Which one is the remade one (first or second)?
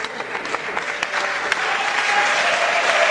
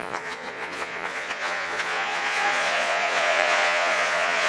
second